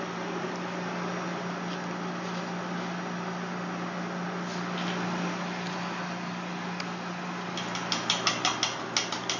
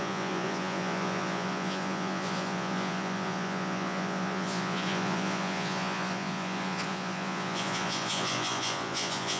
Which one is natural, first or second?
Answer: first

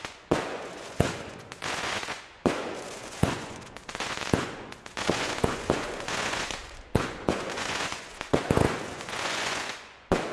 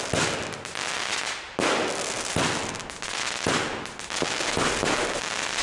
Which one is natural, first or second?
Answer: second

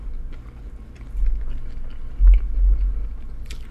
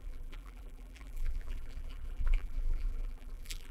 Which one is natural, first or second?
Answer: first